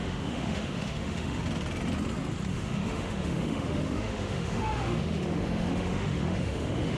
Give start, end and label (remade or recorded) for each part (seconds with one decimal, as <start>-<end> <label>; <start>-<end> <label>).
0.0-1.4 remade; 1.4-2.5 recorded; 2.5-7.0 remade